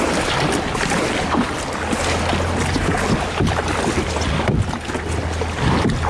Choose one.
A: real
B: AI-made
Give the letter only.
A